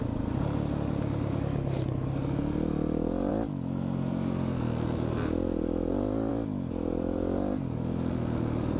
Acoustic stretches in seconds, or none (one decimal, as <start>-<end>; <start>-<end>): 0.0-8.8